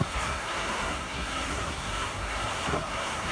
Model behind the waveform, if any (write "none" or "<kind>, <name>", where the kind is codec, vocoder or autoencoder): codec, SNAC